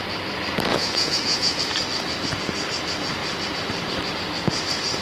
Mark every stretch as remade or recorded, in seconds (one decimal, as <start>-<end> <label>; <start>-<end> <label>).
0.0-0.7 recorded; 0.7-1.6 remade; 1.6-5.0 recorded